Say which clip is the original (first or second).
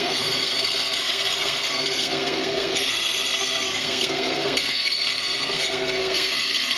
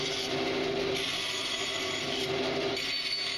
second